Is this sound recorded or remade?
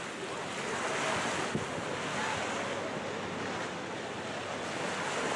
recorded